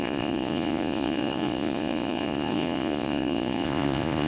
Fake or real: fake